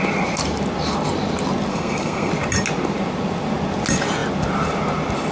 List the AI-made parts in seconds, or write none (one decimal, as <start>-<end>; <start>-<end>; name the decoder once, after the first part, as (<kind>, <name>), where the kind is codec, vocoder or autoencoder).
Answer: 1.7-2.3 (codec, SNAC)